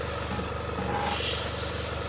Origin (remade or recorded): recorded